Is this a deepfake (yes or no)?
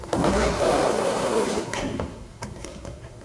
yes